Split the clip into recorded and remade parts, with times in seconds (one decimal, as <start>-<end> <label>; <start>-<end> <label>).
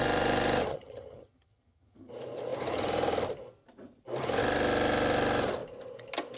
0.0-0.7 recorded; 0.7-2.1 remade; 2.1-6.4 recorded